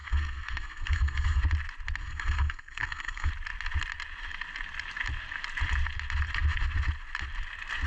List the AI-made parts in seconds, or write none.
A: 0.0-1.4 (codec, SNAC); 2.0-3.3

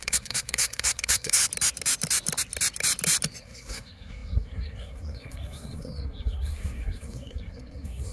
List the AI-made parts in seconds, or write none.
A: 0.0-1.4 (codec, SNAC); 3.4-8.1

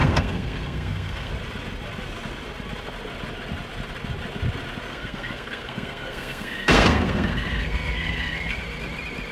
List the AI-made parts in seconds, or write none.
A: 0.0-1.3 (codec, SNAC); 4.9-8.6

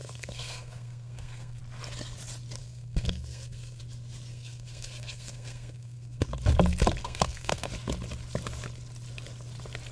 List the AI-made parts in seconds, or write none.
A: 0.0-1.6 (codec, SNAC); 2.6-3.8; 4.3-6.2; 7.0-7.7

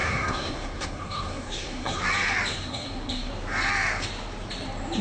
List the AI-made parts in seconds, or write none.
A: 0.0-2.0 (codec, SNAC); 2.5-3.3